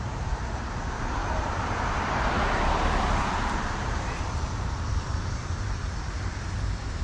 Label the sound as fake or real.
fake